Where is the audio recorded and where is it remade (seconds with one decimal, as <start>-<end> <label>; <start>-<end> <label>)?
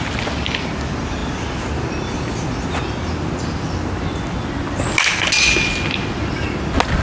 0.0-7.0 recorded